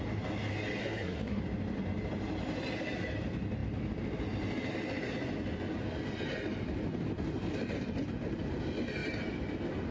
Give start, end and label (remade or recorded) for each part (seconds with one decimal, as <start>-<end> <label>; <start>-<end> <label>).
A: 0.0-0.8 recorded; 0.8-1.4 remade; 1.4-9.9 recorded